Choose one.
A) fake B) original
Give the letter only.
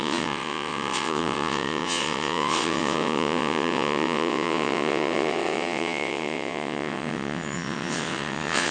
A